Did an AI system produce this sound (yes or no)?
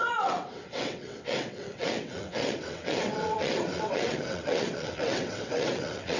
yes